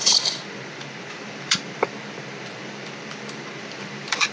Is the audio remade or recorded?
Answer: remade